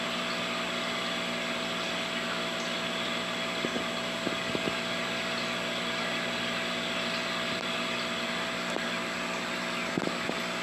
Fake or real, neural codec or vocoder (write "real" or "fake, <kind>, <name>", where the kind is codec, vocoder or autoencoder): fake, vocoder, BigVGAN v2